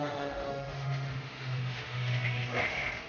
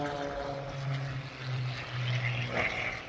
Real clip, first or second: second